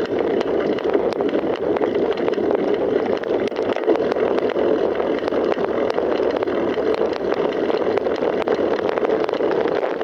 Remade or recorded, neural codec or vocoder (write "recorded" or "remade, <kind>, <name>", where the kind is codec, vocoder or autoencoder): recorded